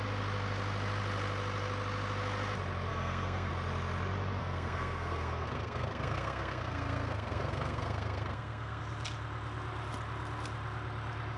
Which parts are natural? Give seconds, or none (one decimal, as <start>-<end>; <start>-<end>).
0.0-2.9; 3.5-4.4; 8.8-11.4